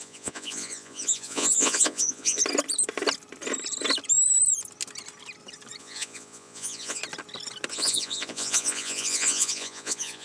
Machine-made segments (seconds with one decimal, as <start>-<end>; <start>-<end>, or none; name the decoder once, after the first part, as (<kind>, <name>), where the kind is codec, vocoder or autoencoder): 0.0-2.4 (vocoder, Vocos); 5.8-7.0; 7.7-10.2